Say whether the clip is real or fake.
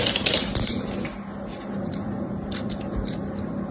real